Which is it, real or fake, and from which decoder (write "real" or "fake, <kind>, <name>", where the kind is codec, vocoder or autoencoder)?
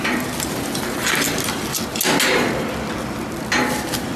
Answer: real